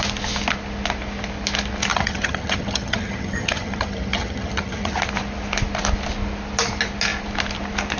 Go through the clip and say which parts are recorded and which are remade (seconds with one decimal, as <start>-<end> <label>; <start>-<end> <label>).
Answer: 0.0-1.9 recorded; 1.9-5.0 remade; 5.0-8.0 recorded